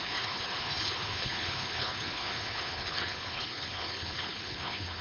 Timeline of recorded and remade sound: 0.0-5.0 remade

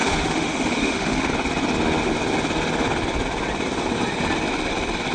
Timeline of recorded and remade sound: 0.0-1.3 remade; 1.3-5.1 recorded

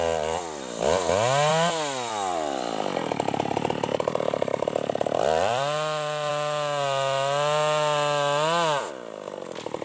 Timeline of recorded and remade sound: 0.0-1.5 recorded; 1.5-6.3 remade; 6.3-9.8 recorded

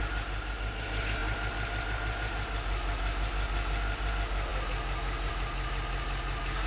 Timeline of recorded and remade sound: 0.0-6.7 recorded

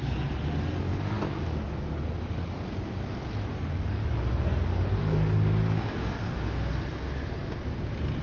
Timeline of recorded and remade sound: 0.0-0.9 recorded; 0.9-1.9 remade; 1.9-3.5 recorded; 3.5-6.2 remade; 6.2-8.2 recorded